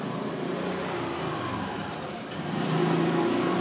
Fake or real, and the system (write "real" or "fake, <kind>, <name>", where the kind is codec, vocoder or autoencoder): real